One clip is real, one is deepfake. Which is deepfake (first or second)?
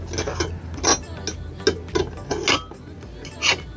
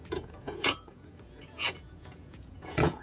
second